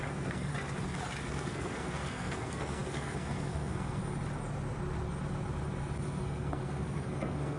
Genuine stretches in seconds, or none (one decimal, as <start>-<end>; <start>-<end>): 0.5-1.2; 4.0-6.2